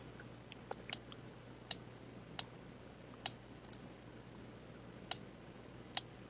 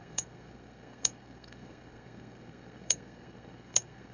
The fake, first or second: second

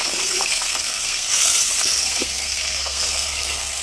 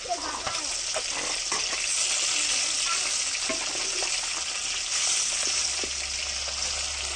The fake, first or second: first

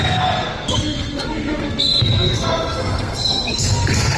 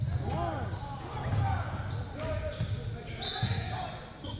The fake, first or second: first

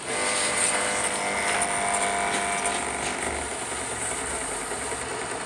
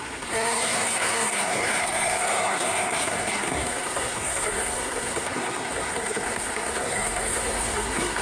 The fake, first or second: second